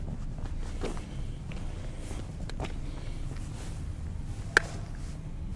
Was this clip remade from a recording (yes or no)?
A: no